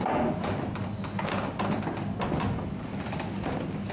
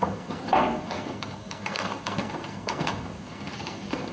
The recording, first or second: first